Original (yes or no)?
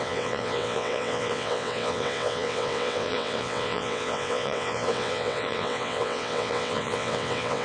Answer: no